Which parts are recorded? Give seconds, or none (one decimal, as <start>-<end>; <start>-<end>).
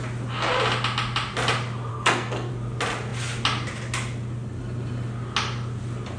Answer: 0.0-1.9; 2.5-6.2